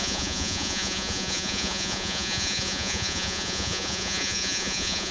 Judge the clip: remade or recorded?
remade